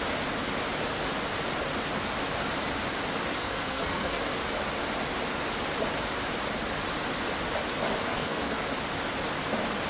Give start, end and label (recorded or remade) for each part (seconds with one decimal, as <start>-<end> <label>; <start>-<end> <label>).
0.0-3.4 recorded; 3.4-4.2 remade; 4.2-8.1 recorded; 8.1-8.6 remade; 8.6-9.9 recorded